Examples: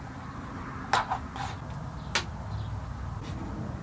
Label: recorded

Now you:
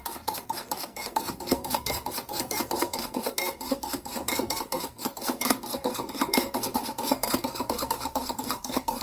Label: remade